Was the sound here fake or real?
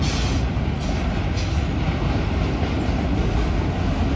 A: real